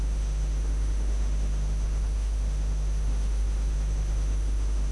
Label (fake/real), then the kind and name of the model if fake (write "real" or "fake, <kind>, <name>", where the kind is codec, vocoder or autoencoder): fake, autoencoder, DAC-VAE